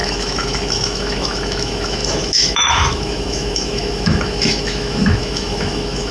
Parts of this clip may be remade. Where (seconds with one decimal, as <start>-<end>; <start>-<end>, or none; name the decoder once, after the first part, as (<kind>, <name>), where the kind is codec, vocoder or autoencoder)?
0.0-6.1 (autoencoder, DAC-VAE)